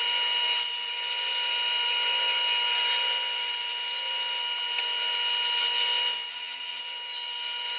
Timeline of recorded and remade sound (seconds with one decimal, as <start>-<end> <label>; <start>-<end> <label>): 0.0-6.3 recorded; 6.3-6.8 remade; 6.8-7.8 recorded